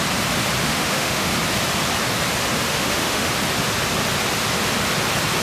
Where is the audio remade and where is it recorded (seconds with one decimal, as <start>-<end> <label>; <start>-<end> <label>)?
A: 0.0-0.6 recorded; 0.6-1.3 remade; 1.3-2.7 recorded; 2.7-3.3 remade; 3.3-5.4 recorded